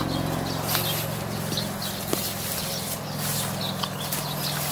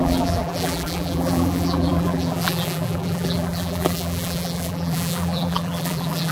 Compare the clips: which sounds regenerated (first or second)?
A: second